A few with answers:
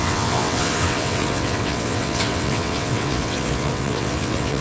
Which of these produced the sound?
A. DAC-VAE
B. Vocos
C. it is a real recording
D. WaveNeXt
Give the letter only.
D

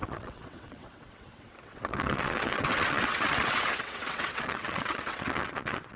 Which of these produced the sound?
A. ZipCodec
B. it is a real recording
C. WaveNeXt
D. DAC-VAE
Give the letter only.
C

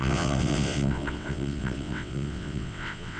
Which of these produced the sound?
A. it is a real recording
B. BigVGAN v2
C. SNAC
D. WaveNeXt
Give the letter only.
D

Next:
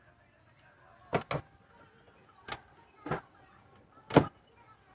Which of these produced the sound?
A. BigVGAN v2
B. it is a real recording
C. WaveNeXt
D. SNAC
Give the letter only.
B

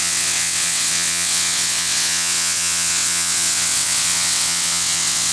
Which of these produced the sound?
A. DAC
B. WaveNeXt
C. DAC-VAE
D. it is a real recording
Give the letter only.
B